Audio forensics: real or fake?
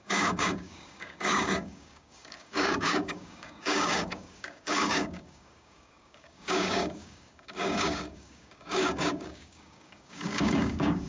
fake